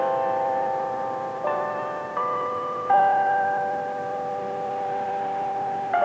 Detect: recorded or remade recorded